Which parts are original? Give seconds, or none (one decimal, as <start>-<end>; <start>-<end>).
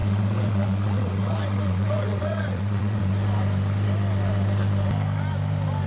3.0-5.9